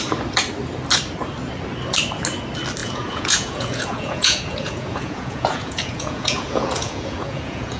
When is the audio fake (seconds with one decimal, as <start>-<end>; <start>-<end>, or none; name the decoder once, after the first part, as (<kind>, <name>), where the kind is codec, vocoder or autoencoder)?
2.8-7.8 (vocoder, Vocos)